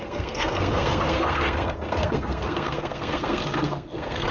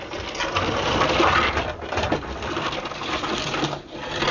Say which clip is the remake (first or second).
first